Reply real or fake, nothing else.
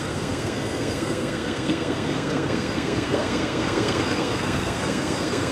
fake